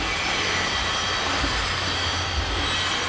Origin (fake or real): real